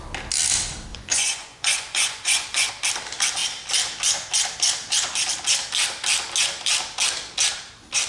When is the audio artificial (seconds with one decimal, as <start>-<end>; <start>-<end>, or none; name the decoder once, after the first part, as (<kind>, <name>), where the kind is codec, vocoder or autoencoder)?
0.9-2.7 (vocoder, Vocos)